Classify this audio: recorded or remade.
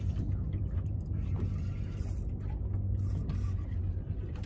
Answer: recorded